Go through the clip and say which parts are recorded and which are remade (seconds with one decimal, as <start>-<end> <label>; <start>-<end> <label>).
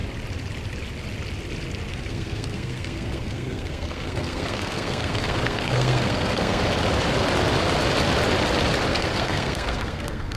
0.0-1.9 recorded; 1.9-6.6 remade; 6.6-8.9 recorded; 8.9-10.4 remade